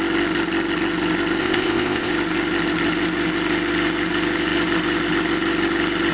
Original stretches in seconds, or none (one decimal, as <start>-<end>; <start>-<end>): 0.0-1.4; 2.1-6.1